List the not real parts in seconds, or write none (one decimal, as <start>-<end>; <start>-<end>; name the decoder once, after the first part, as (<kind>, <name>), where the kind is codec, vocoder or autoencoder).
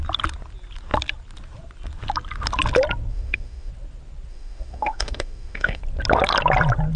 3.1-3.7 (autoencoder, DAC-VAE); 4.3-5.8